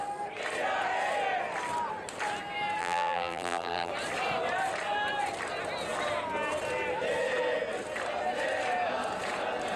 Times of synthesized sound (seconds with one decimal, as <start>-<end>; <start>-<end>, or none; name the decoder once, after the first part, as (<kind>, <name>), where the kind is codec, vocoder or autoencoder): 2.8-3.9 (vocoder, BigVGAN v2)